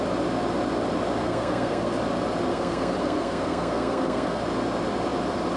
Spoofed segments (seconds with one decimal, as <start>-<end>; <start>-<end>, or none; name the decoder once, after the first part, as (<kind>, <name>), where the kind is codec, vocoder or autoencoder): 1.2-2.0 (codec, SNAC); 2.5-4.4